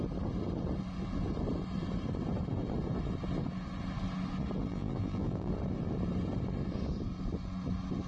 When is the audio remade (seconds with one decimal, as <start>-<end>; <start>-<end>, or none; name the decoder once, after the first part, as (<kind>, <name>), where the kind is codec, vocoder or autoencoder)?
4.7-5.5 (vocoder, BigVGAN v2)